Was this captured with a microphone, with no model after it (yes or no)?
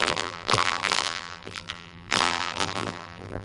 no